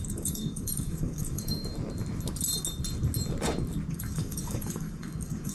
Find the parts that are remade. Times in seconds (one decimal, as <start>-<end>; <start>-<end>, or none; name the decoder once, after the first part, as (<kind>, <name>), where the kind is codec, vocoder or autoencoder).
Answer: 0.0-1.7 (codec, DAC); 3.9-5.5